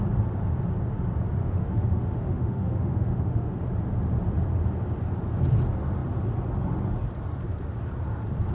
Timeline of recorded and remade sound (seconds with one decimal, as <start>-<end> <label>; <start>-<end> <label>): 0.0-1.4 recorded; 1.4-3.6 remade; 3.6-8.5 recorded